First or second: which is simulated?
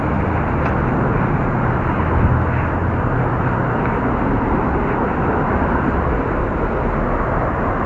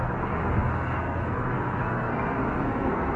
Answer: second